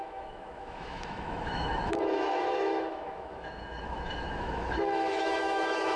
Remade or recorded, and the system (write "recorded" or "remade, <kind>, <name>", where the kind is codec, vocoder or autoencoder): remade, autoencoder, DAC-VAE